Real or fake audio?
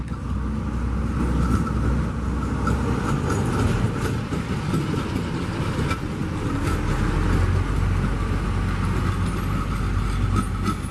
real